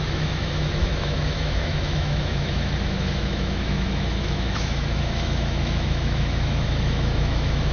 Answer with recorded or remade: remade